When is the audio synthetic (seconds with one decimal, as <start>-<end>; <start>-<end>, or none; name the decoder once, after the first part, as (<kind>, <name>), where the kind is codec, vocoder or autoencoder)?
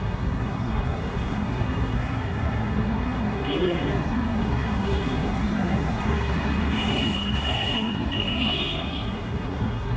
0.0-10.0 (codec, SNAC)